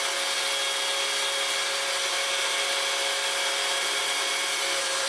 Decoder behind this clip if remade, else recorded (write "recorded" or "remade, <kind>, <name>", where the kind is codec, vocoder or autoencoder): recorded